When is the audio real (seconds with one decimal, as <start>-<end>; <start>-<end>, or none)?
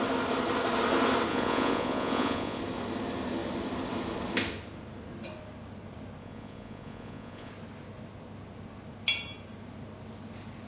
0.0-1.3; 2.6-6.2; 7.5-10.7